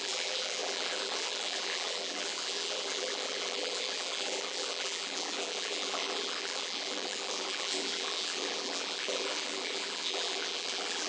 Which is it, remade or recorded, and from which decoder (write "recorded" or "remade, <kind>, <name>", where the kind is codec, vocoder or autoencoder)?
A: remade, vocoder, BigVGAN v2